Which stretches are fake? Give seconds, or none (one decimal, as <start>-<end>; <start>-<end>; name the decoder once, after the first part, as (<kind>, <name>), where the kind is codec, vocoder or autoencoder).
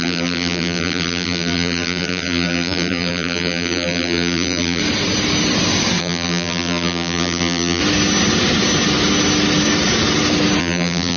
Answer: 0.0-4.8 (vocoder, BigVGAN v2); 6.0-7.8; 10.6-11.2